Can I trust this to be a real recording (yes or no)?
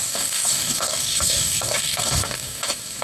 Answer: no